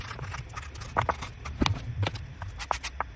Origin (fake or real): real